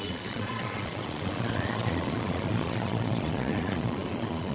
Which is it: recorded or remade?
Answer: remade